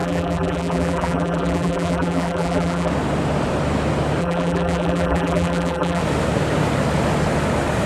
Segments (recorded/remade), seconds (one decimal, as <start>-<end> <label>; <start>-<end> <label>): 0.0-2.9 remade; 2.9-4.2 recorded; 4.2-6.0 remade; 6.0-7.9 recorded